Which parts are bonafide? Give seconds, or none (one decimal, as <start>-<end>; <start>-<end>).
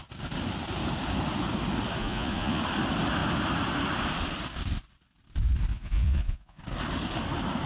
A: 0.0-2.0; 2.6-5.7; 6.6-7.7